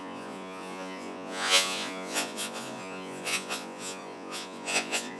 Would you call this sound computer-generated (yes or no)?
yes